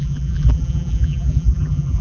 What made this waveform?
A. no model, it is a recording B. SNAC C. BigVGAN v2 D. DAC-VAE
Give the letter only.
C